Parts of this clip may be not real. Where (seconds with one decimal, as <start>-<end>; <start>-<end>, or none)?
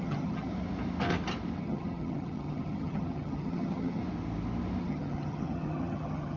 0.0-0.5; 1.6-4.0; 4.8-6.4